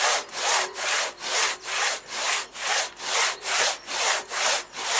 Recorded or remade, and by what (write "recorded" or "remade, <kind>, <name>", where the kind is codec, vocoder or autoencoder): recorded